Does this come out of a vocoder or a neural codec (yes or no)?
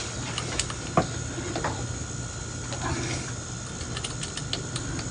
no